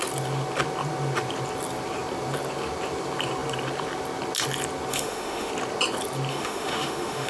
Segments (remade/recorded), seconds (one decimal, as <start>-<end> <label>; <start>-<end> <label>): 0.0-4.9 recorded; 4.9-5.5 remade; 5.5-6.3 recorded; 6.3-7.3 remade